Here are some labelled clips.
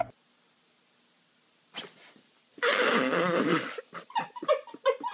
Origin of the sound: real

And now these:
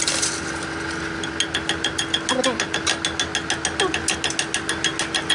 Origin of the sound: real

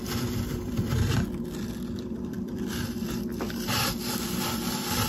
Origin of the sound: fake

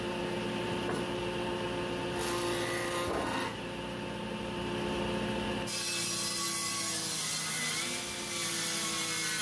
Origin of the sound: real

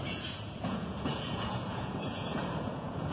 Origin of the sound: fake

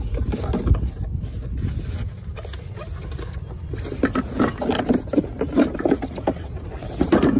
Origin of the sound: real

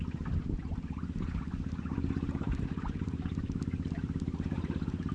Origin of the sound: fake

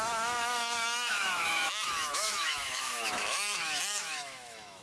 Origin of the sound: fake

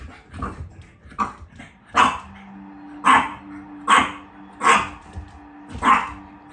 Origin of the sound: real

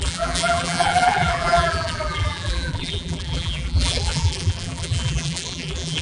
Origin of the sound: fake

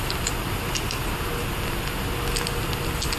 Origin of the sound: real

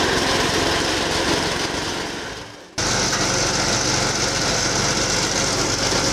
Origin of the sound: real